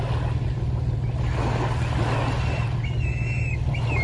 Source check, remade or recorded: recorded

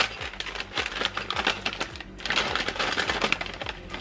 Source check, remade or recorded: recorded